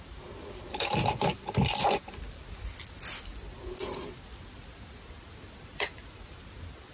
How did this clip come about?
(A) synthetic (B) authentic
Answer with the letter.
B